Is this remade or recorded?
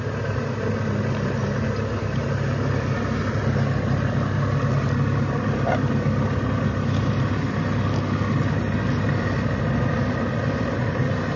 recorded